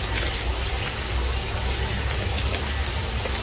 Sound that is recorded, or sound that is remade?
recorded